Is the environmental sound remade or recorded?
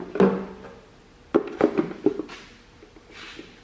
recorded